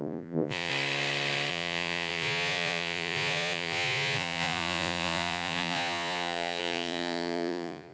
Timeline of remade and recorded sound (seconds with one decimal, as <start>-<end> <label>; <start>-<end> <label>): 0.0-0.7 remade; 0.7-1.5 recorded; 1.5-7.9 remade